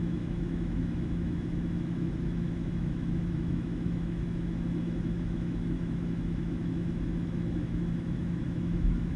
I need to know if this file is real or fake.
fake